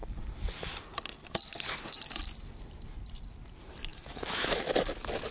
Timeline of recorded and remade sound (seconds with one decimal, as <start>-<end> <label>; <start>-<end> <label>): 0.0-3.9 recorded; 3.9-4.7 remade; 4.7-5.3 recorded